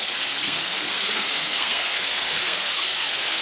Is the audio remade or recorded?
remade